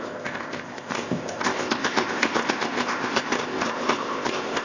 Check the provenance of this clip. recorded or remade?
remade